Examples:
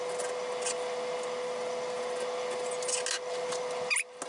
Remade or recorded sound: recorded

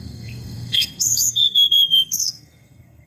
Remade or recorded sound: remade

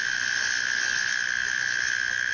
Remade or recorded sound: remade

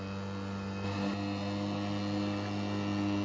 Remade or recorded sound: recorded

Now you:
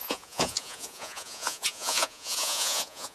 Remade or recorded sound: remade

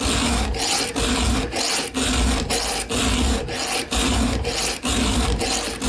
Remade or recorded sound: recorded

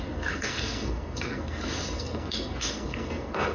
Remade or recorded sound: remade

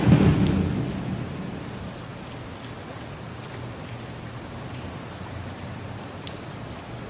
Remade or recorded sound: recorded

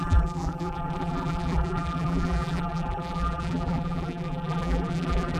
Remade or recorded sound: remade